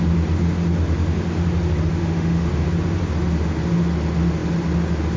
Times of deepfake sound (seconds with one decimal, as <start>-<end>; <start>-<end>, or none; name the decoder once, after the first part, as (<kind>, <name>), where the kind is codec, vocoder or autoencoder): 1.9-2.5 (autoencoder, DAC-VAE)